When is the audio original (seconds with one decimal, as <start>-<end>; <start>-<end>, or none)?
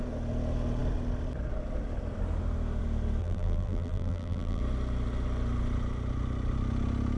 0.0-3.2; 4.6-7.2